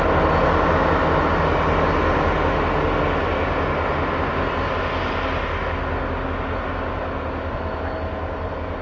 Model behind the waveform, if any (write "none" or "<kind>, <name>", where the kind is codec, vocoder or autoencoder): none